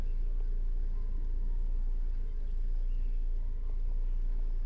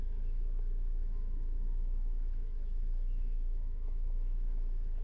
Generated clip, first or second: second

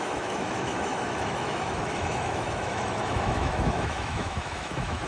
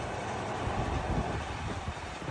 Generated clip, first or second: first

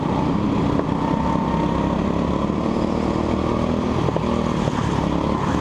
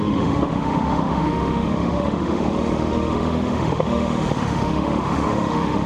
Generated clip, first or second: second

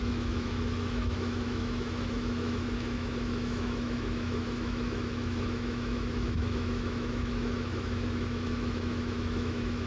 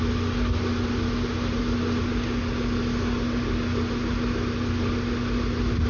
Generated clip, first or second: first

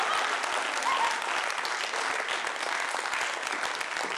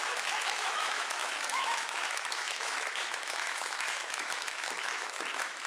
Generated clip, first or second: second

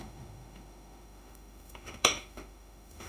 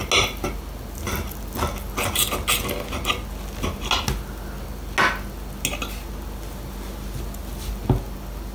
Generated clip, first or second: first